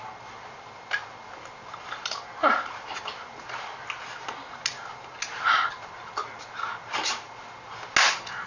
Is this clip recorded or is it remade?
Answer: recorded